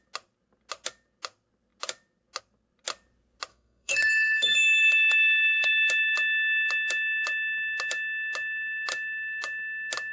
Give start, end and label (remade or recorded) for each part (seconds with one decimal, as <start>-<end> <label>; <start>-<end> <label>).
0.0-3.5 recorded; 3.5-5.7 remade; 5.7-10.1 recorded